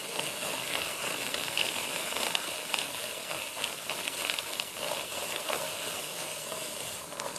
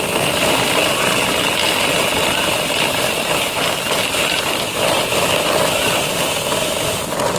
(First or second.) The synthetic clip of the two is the first